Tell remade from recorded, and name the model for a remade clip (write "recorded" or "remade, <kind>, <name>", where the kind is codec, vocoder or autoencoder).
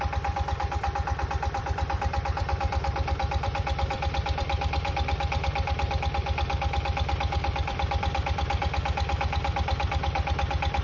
remade, vocoder, BigVGAN v2